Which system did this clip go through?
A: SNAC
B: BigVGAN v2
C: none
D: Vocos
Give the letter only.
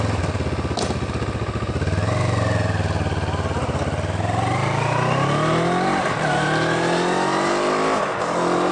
C